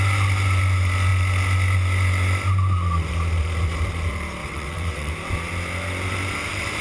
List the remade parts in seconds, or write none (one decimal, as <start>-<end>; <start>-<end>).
4.4-5.1